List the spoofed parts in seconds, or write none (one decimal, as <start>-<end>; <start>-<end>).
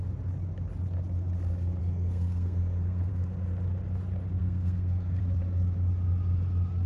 1.8-3.1; 4.4-5.2